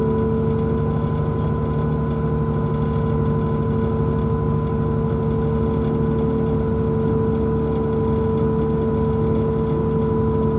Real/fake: real